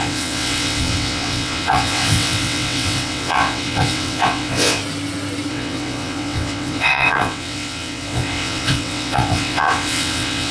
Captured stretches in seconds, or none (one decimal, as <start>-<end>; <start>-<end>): 4.8-5.5